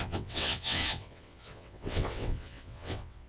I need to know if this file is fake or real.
fake